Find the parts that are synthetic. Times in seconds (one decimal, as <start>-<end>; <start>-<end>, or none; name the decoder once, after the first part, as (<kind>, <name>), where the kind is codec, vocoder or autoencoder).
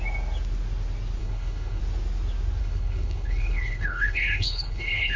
1.2-1.8 (codec, HILCodec); 2.6-5.2